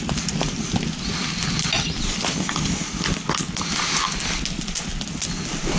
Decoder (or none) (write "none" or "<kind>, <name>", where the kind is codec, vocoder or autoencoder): none